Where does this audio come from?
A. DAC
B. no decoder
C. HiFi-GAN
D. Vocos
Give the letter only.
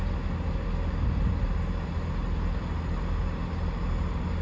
B